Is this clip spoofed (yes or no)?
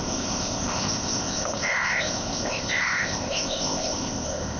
yes